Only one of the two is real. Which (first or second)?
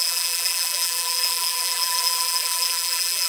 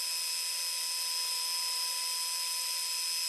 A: second